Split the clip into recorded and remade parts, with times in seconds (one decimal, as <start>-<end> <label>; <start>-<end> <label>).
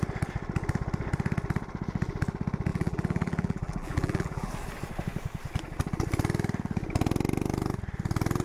0.0-2.7 recorded; 2.7-4.5 remade; 4.5-8.4 recorded